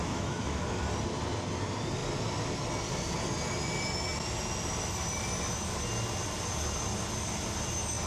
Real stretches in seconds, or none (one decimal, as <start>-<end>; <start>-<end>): 0.6-8.1